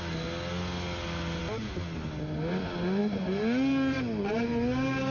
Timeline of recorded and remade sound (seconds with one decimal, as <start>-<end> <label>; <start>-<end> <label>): 0.0-5.1 recorded